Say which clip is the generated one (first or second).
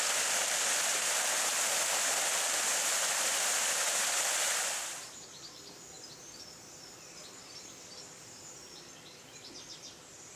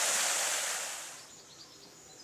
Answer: first